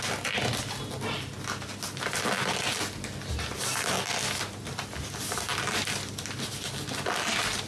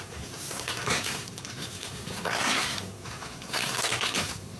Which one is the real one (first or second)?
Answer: first